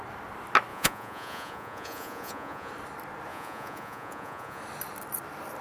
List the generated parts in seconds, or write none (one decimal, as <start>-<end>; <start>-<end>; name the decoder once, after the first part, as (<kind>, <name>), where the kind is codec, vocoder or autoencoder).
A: 0.7-2.7 (vocoder, Vocos); 3.3-4.6